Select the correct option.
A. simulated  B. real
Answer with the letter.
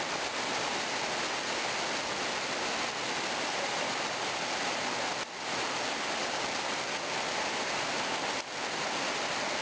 B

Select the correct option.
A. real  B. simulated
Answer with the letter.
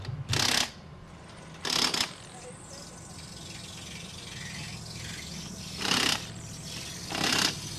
A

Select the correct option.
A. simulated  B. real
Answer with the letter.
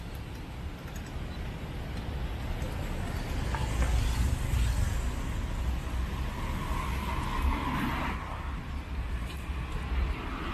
B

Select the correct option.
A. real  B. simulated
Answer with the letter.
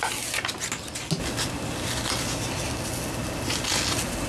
A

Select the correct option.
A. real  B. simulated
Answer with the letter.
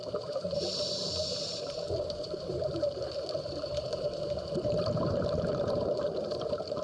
B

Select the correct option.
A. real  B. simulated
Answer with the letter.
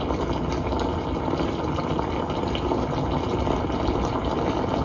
A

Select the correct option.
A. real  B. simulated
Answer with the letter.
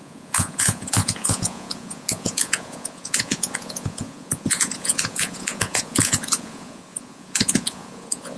B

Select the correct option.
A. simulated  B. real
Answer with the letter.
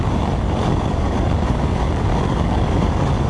A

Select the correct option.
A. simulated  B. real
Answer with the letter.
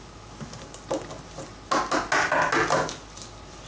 B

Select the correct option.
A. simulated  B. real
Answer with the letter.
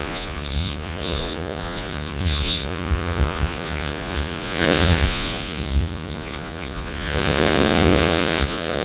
A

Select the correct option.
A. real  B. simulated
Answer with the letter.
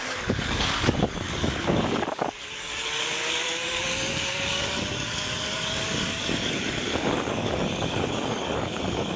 B